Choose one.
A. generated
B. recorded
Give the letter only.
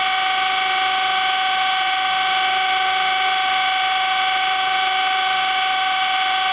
B